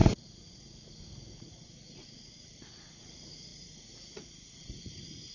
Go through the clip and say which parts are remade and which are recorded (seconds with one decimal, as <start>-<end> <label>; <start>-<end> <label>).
0.0-5.3 remade